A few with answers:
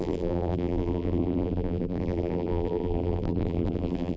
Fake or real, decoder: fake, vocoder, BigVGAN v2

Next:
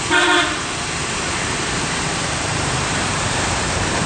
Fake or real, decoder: fake, vocoder, BigVGAN v2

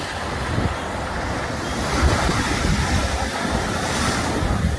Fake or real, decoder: fake, vocoder, BigVGAN v2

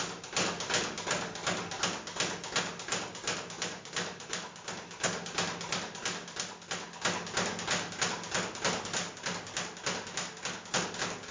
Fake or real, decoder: real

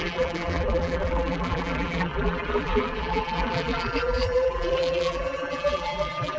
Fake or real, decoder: fake, vocoder, BigVGAN v2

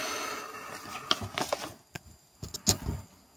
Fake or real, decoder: real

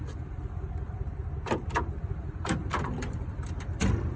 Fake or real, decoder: fake, vocoder, BigVGAN v2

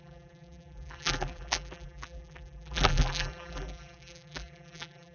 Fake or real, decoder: fake, vocoder, BigVGAN v2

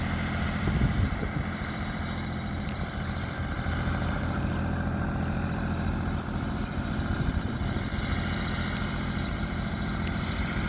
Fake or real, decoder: real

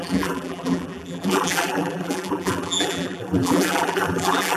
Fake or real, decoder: fake, vocoder, BigVGAN v2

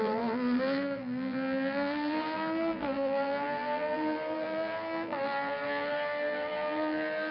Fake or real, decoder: fake, vocoder, BigVGAN v2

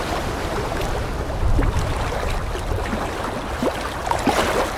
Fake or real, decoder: real